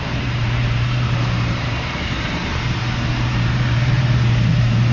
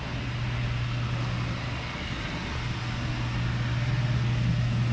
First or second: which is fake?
first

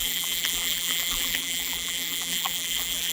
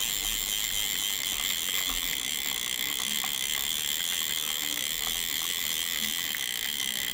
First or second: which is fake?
first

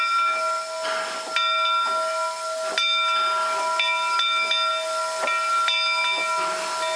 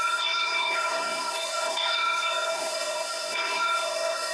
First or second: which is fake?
second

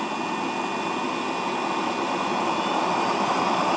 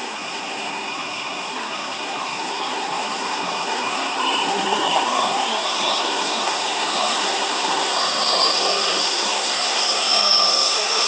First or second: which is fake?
second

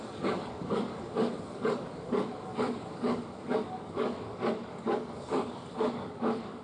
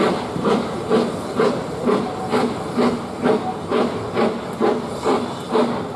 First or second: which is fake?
first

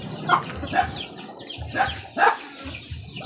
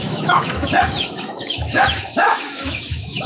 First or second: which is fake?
second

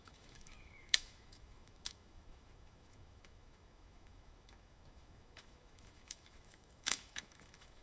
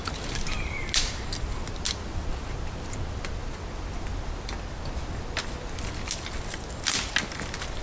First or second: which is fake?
first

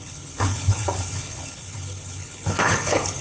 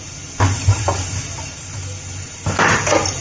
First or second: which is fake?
first